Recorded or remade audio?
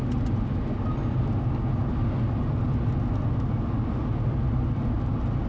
recorded